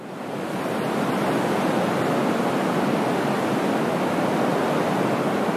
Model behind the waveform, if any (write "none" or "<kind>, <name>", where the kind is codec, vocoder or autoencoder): none